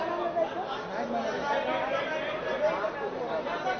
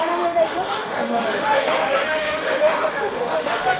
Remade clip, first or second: second